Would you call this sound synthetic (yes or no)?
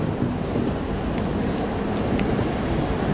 yes